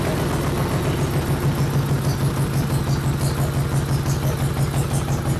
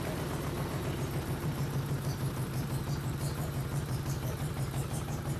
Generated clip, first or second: second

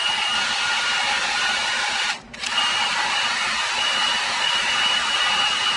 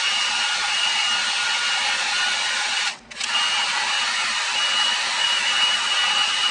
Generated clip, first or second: first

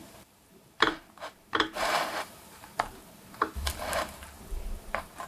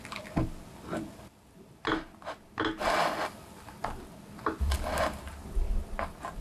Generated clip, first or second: first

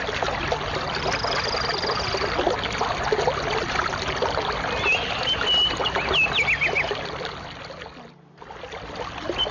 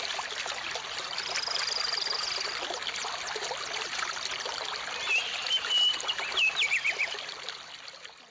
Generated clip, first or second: second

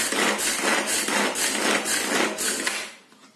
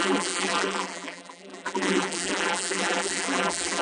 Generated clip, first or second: second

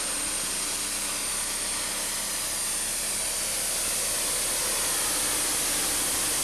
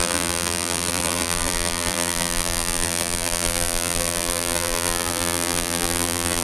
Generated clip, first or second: second